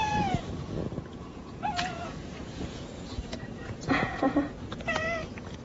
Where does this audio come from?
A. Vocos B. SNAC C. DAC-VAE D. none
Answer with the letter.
A